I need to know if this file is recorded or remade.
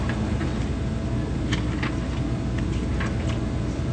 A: recorded